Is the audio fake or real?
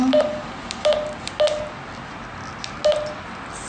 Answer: real